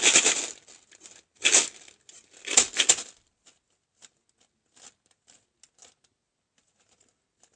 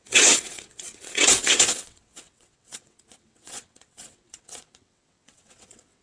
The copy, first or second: second